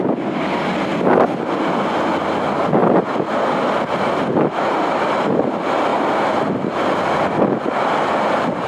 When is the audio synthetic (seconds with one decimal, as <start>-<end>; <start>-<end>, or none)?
2.8-5.0; 5.9-8.7